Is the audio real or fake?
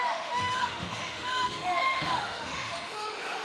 fake